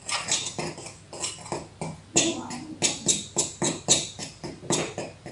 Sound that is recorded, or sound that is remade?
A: recorded